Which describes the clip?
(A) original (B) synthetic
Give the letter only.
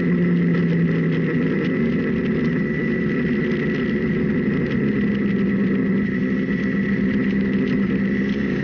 A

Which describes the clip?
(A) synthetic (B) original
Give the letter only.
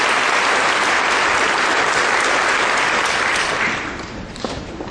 B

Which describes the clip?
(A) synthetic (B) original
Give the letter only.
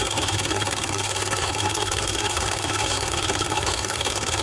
A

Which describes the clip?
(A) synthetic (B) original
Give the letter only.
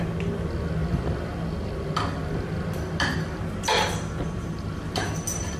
B